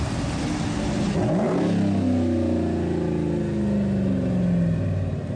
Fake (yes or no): no